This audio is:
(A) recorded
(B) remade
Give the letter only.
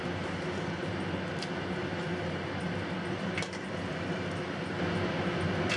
A